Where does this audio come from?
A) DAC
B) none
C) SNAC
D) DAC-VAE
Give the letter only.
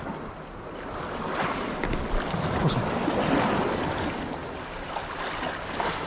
B